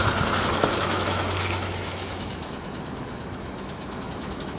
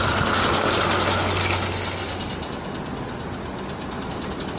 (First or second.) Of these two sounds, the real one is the second